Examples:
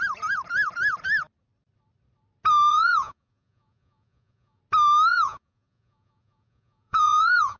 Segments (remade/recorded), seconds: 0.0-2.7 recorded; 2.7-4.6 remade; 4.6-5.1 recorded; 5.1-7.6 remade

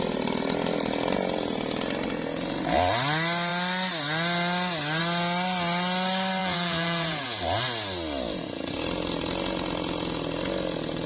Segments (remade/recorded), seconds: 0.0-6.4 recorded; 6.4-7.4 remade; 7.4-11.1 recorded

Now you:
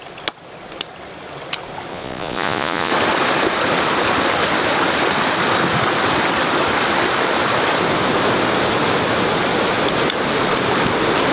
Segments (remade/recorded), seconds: 0.0-1.9 recorded; 1.9-2.9 remade; 2.9-11.3 recorded

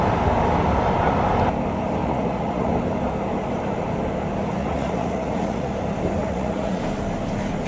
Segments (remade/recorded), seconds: 0.0-2.0 recorded; 2.0-2.7 remade; 2.7-4.6 recorded; 4.6-5.7 remade; 5.7-6.2 recorded; 6.2-6.8 remade; 6.8-7.7 recorded